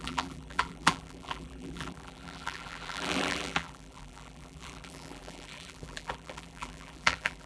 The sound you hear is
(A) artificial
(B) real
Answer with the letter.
A